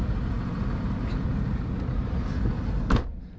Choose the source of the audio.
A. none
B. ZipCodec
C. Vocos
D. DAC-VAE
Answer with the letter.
A